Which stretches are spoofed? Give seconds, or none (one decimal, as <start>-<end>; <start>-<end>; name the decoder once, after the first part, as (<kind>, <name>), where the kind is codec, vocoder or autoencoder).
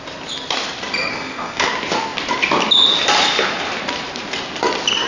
1.1-1.7 (codec, SNAC)